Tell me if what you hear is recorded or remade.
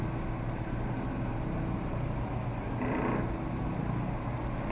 recorded